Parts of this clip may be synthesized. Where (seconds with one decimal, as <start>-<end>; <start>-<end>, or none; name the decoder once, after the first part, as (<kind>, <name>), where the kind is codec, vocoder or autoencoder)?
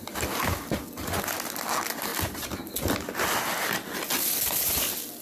none